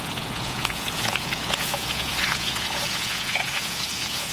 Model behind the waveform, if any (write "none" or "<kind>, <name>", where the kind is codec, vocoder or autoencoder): vocoder, Vocos